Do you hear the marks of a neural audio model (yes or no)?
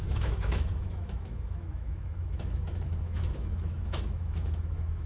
yes